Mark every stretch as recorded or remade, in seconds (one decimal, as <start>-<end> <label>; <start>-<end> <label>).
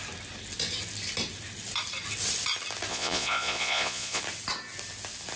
0.0-2.9 recorded; 2.9-4.2 remade; 4.2-5.4 recorded